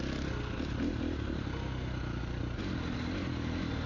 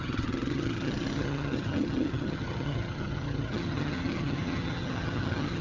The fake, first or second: second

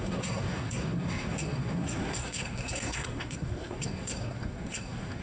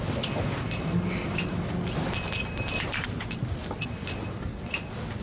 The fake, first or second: first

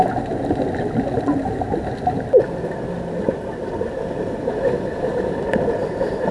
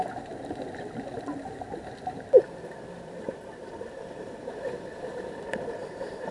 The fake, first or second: second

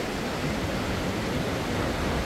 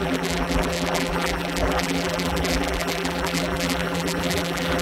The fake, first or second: second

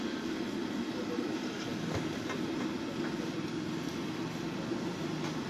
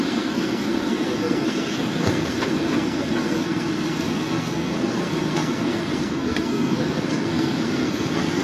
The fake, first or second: second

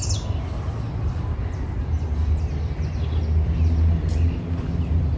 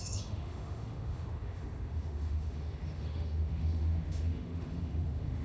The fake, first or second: second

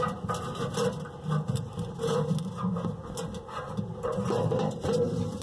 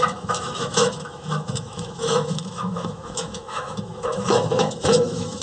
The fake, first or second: second